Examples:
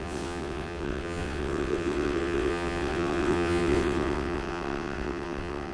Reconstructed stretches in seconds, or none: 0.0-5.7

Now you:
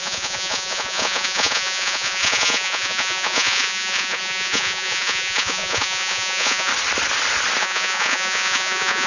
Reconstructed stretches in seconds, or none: 0.0-6.7; 7.6-9.1

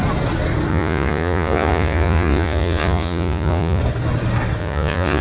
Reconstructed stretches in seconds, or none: 0.7-3.8; 4.6-5.2

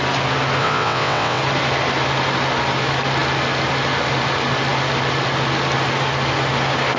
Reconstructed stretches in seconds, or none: 0.6-1.4

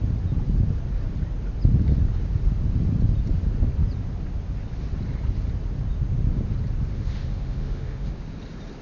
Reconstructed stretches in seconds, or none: 6.9-8.1

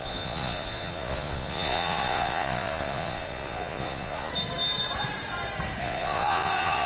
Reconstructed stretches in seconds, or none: 0.0-4.3; 5.8-6.9

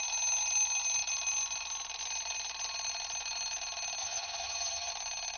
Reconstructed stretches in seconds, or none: 4.0-4.9

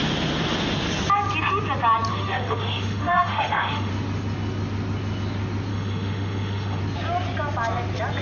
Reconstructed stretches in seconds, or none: 2.1-3.9; 5.7-6.8